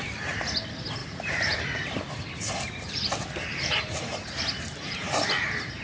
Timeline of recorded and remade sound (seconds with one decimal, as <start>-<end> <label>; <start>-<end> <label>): 0.0-1.0 recorded; 1.0-1.6 remade; 1.6-5.8 recorded